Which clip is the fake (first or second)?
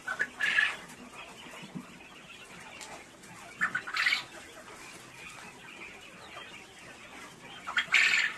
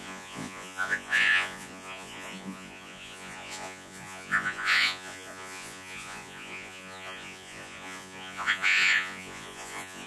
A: second